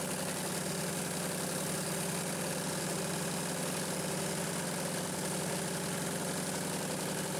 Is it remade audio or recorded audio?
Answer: recorded